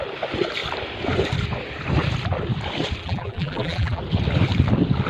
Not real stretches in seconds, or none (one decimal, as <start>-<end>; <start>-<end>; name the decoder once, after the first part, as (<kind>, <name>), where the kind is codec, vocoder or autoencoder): 3.0-4.0 (vocoder, BigVGAN v2)